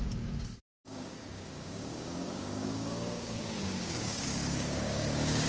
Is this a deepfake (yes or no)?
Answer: yes